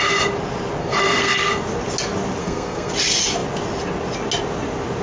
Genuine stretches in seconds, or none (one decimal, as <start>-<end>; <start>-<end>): 0.0-0.8; 1.5-2.4; 2.9-5.0

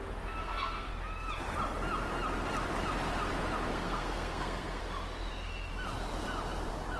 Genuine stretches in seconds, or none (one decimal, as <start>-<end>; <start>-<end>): 0.0-0.4; 0.9-3.7; 4.8-7.0

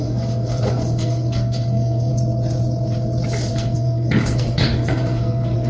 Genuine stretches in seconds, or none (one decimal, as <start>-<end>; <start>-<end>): 2.1-3.5